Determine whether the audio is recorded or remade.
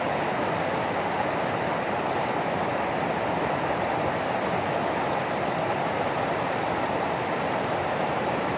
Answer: recorded